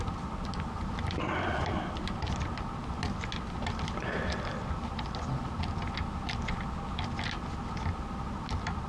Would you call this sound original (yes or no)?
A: yes